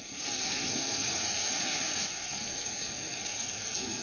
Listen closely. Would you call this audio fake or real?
fake